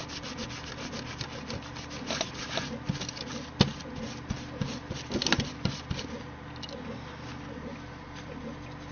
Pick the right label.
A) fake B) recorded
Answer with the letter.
B